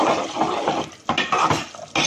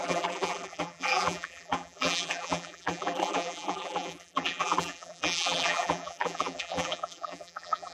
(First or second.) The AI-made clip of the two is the second